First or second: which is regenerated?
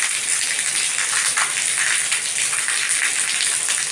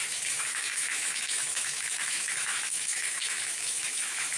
second